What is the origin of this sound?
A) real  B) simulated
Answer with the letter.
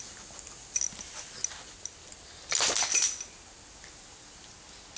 A